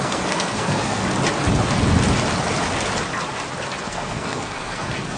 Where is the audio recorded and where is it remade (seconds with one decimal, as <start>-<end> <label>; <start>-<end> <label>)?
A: 0.0-1.0 remade; 1.0-3.8 recorded; 3.8-5.2 remade